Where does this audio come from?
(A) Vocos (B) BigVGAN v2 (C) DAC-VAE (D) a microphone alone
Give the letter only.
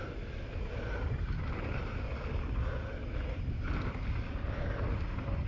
D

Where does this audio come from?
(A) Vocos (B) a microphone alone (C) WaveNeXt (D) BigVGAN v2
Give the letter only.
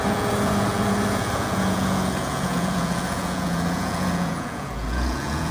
A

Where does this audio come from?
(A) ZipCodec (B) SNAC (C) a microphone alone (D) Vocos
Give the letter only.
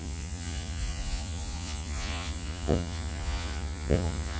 D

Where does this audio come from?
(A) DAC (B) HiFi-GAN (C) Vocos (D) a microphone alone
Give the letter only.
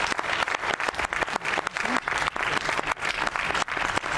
D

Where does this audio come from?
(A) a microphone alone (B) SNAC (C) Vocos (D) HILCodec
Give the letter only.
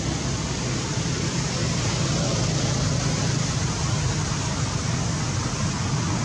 A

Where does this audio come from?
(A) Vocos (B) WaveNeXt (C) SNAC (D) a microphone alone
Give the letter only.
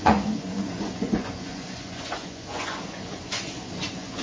A